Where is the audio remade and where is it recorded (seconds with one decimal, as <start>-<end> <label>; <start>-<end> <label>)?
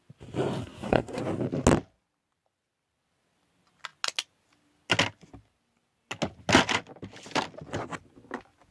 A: 0.0-0.6 recorded; 0.6-1.2 remade; 1.2-8.7 recorded